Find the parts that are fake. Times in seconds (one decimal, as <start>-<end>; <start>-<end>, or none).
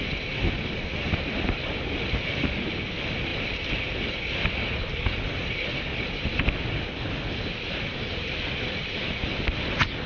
none